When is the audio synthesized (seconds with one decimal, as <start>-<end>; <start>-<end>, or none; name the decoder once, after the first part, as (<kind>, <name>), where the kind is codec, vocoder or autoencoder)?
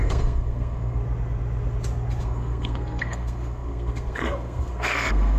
0.0-1.0 (codec, SNAC); 2.2-5.4